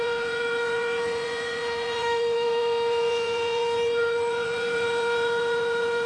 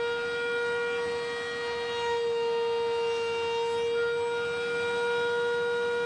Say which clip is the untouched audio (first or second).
second